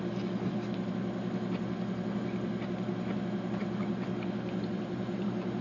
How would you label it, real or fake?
real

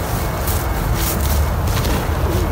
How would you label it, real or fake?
real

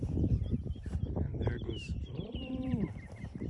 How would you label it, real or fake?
fake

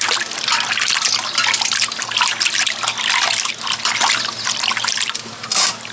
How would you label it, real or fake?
real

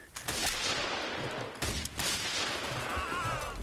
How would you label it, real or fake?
real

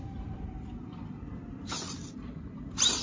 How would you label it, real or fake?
real